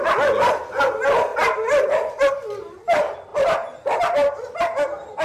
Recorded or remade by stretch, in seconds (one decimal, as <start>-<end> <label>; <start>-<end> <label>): 0.0-1.3 recorded; 1.3-2.3 remade; 2.3-5.2 recorded